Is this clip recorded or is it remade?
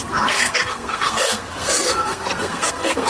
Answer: remade